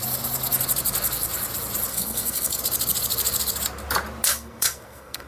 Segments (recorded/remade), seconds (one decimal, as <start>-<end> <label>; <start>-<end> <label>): 0.0-1.9 recorded; 1.9-2.6 remade; 2.6-4.3 recorded; 4.3-5.3 remade